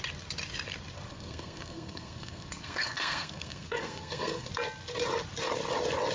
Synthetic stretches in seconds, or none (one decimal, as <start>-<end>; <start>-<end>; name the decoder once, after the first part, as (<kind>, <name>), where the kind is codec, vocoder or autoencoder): 1.1-4.5 (codec, SNAC)